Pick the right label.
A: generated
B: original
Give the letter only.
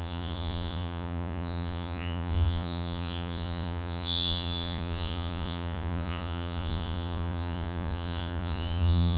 A